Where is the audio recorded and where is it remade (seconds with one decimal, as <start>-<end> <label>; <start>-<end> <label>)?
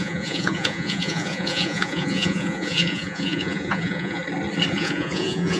0.0-4.2 remade; 4.2-4.7 recorded; 4.7-5.6 remade